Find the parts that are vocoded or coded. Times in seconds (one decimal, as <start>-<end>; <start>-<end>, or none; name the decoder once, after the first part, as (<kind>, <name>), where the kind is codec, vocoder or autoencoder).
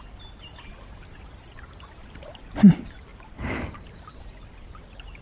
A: none